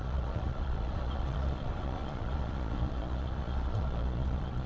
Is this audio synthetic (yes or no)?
yes